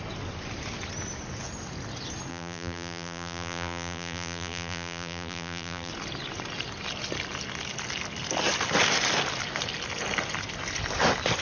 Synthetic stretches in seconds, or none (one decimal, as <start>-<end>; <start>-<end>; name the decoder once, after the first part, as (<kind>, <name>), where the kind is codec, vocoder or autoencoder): 2.3-5.9 (vocoder, BigVGAN v2)